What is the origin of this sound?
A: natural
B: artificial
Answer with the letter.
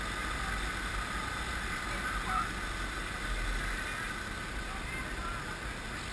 A